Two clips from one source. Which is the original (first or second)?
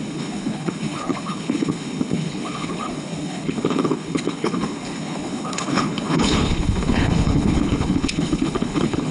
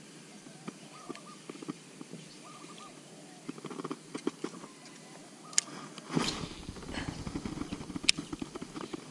second